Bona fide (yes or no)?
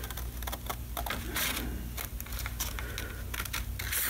yes